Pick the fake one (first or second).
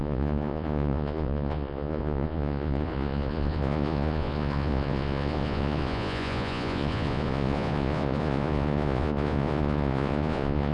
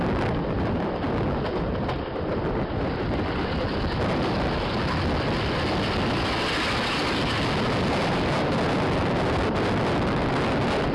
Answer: first